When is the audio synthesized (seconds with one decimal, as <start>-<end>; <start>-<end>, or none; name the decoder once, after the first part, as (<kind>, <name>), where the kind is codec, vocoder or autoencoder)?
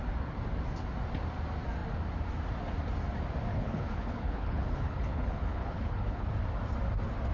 3.5-6.3 (codec, HILCodec)